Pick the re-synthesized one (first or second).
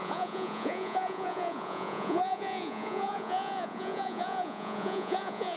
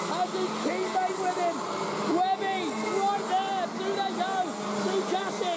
first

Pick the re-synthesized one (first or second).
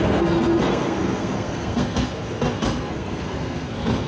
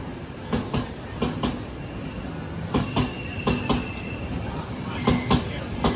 first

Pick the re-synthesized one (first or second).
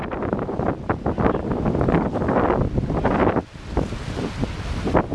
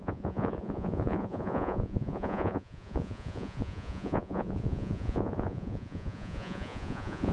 second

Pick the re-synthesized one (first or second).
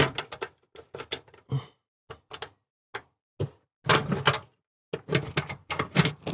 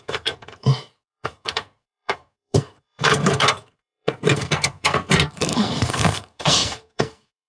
second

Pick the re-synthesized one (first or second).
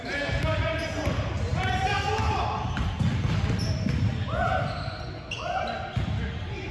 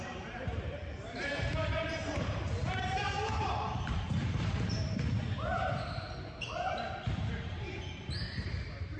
second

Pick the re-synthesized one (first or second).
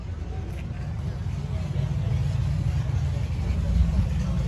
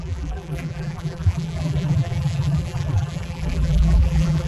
second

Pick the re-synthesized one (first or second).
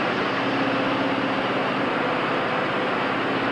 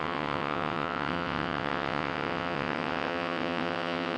second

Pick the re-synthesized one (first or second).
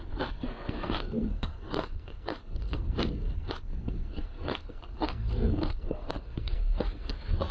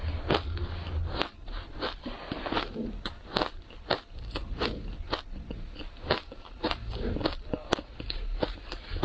first